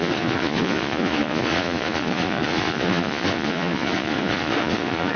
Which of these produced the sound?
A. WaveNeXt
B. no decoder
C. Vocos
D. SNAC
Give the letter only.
C